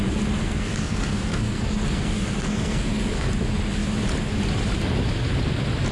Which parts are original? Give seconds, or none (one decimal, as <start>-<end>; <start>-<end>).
0.0-0.4; 3.3-5.9